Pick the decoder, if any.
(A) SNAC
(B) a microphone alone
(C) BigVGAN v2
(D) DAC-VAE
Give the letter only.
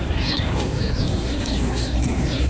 A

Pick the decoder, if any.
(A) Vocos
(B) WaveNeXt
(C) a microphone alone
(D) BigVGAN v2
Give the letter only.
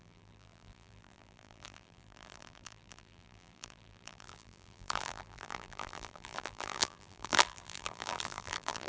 D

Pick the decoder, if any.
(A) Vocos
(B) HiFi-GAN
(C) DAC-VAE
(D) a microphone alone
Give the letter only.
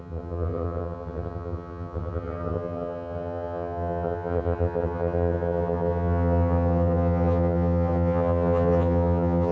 B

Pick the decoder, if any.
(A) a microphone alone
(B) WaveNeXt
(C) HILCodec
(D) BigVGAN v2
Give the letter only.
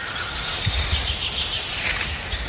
A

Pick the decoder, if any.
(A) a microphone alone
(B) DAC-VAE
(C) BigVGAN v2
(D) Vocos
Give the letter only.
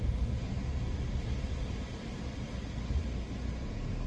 A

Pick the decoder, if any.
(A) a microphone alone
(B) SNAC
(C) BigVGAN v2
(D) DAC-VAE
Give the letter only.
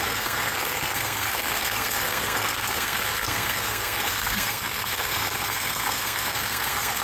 B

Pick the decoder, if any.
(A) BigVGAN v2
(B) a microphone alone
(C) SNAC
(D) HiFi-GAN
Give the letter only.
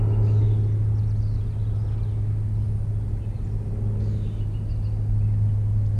B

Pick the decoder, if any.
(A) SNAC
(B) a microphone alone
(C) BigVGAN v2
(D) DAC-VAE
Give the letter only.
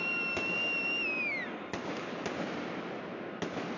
B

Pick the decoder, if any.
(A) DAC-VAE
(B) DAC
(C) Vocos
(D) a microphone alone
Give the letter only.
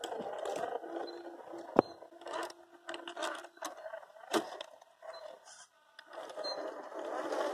D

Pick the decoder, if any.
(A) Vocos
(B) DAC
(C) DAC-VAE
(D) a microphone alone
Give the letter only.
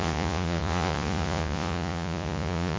A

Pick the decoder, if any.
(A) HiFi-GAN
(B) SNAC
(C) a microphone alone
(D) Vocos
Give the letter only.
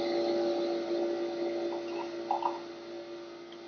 C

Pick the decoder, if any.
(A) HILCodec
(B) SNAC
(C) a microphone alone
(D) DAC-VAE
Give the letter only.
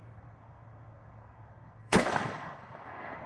B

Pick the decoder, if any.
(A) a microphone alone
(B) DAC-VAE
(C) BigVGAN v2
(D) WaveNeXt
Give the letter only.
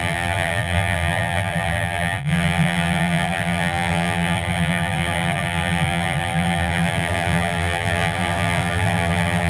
C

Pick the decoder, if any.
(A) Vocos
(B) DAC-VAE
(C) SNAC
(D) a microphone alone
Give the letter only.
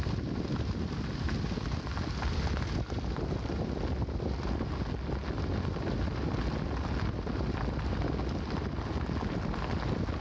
D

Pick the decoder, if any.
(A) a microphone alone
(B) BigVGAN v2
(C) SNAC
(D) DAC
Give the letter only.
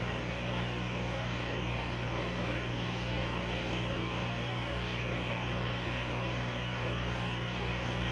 D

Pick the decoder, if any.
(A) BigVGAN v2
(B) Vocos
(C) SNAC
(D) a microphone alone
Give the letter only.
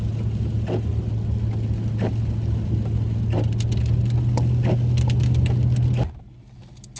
D